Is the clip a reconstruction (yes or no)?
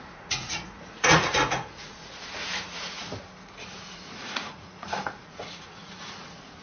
yes